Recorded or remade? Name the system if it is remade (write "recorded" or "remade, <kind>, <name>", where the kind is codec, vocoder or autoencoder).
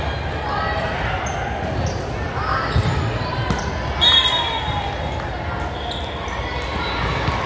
recorded